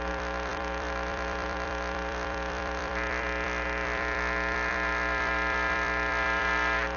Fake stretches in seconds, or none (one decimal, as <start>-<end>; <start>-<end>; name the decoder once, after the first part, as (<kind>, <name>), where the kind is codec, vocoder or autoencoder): 0.0-7.0 (vocoder, BigVGAN v2)